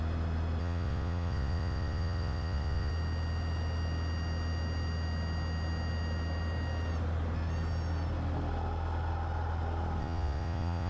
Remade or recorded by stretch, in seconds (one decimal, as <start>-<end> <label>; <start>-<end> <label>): 0.0-0.6 recorded; 0.6-2.9 remade; 2.9-10.0 recorded; 10.0-10.9 remade